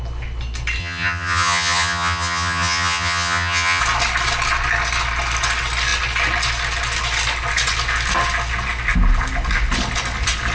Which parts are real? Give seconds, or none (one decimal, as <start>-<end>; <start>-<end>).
0.0-0.8; 3.8-10.5